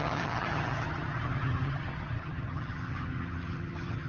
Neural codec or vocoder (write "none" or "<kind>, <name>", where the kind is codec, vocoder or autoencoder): vocoder, HiFi-GAN